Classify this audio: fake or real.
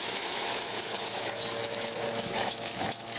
fake